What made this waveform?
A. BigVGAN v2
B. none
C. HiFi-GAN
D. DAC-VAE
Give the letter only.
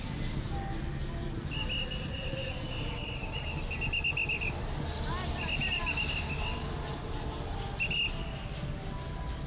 B